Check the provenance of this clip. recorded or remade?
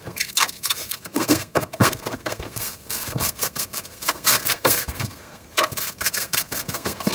remade